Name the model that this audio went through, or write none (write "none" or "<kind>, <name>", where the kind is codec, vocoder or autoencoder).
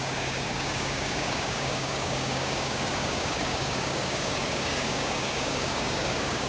codec, DAC